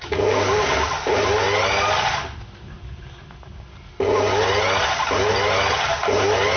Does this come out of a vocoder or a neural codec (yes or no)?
no